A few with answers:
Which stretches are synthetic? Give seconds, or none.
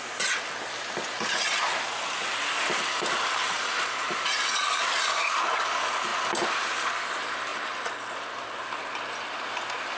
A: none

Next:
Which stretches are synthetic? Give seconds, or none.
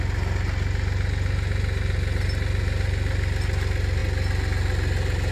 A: none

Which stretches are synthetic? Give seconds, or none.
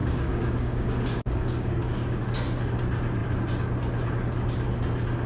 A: 0.0-2.2 (codec, DAC)